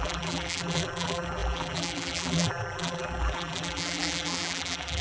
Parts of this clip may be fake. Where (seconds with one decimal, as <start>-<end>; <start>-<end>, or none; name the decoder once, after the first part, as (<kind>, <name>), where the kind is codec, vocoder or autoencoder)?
0.0-5.0 (vocoder, BigVGAN v2)